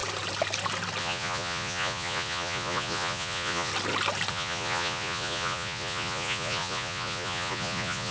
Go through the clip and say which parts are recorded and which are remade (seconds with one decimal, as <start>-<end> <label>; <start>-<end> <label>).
0.0-1.0 recorded; 1.0-3.7 remade; 3.7-4.3 recorded; 4.3-8.1 remade